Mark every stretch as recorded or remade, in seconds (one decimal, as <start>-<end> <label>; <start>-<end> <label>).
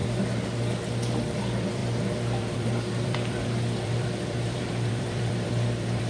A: 0.0-1.4 recorded; 1.4-6.1 remade